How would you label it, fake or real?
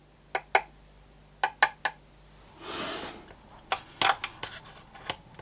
real